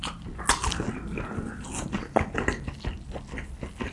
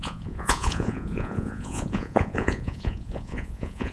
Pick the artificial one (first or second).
second